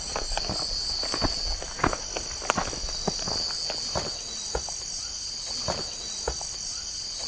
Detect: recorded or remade recorded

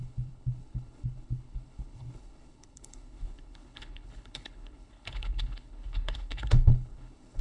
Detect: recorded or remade remade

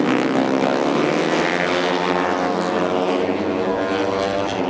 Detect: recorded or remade recorded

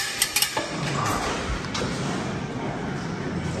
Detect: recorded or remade recorded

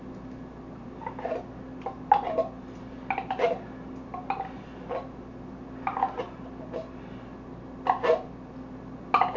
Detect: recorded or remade recorded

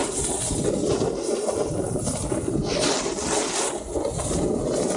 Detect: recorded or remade recorded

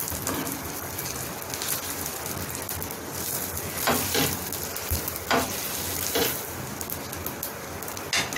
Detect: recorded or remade recorded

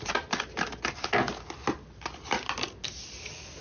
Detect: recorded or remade recorded